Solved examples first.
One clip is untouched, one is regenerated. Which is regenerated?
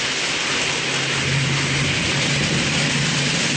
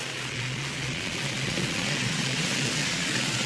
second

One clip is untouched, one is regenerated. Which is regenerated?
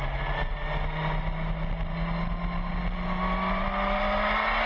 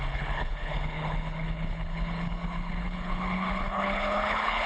second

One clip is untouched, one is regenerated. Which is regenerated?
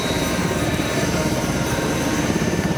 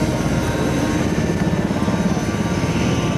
first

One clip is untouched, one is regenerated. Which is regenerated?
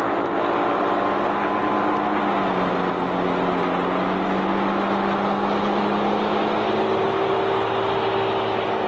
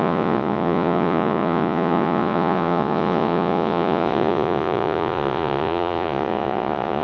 second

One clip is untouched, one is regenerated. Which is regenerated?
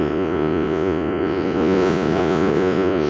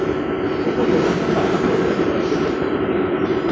first